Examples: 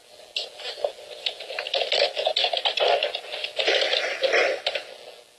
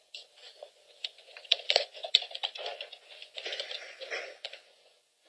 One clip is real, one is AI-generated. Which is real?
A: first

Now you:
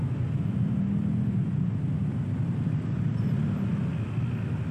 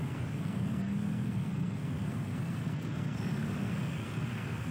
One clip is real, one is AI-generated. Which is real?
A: first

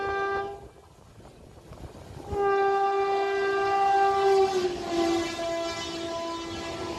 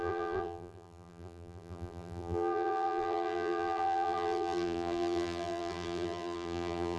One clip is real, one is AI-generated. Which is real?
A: first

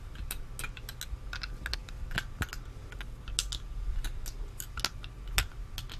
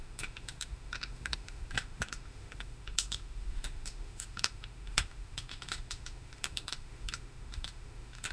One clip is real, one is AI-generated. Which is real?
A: first